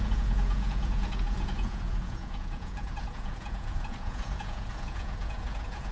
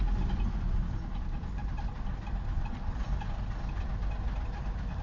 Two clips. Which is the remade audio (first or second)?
first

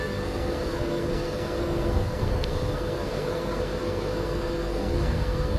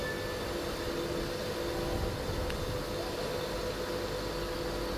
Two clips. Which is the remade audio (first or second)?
first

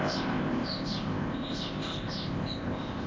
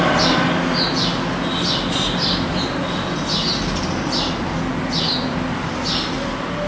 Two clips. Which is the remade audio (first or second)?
first